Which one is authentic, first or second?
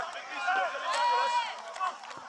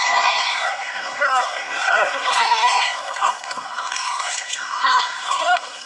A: first